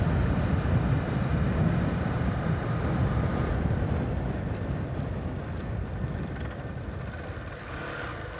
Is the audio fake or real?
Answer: real